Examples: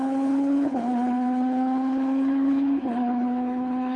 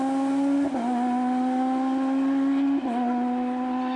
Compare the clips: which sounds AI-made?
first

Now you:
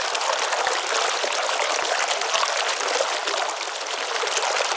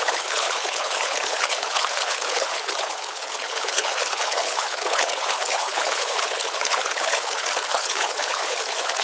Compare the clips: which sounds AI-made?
second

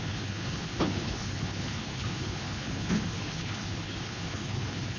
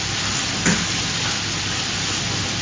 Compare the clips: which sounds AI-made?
first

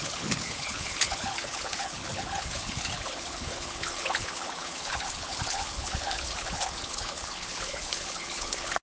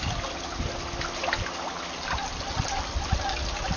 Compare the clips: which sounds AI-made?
first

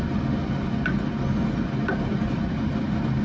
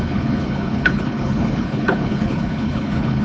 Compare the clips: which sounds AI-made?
second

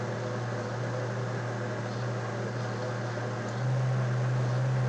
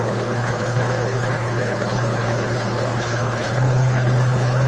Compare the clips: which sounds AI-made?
second